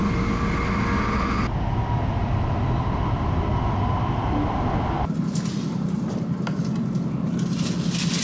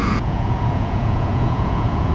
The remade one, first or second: second